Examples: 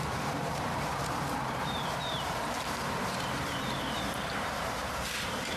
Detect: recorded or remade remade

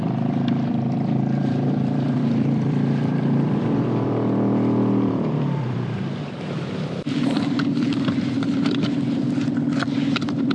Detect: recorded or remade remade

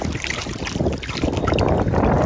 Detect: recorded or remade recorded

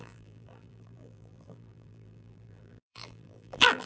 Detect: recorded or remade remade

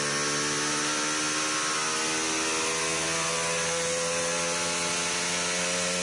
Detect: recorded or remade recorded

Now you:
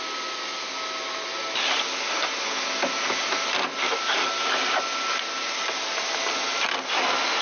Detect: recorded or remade recorded